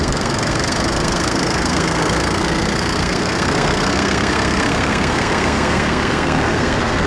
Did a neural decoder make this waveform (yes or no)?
yes